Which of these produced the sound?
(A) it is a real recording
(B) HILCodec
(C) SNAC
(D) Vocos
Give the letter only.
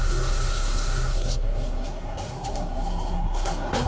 C